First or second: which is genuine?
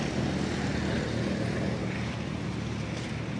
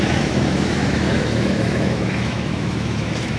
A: first